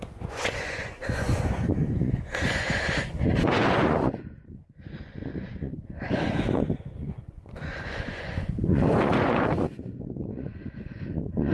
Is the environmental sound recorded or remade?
remade